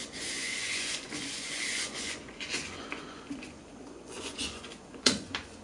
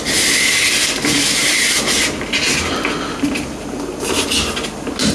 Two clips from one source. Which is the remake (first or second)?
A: first